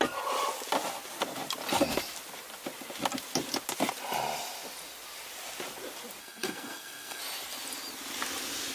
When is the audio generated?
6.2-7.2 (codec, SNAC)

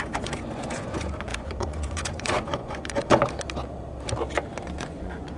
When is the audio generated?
0.0-3.1 (vocoder, Vocos); 4.8-5.4

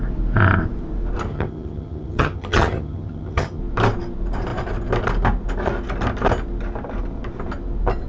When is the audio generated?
1.3-3.6 (vocoder, HiFi-GAN)